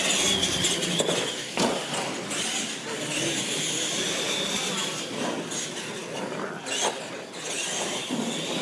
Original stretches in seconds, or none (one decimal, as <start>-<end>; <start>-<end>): 0.0-8.6